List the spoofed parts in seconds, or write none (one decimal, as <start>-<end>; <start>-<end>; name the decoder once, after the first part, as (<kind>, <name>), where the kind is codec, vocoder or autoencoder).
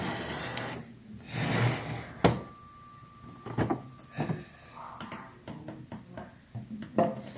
none